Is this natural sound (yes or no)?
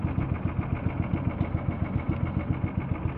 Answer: yes